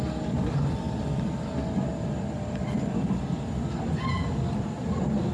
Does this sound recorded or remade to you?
recorded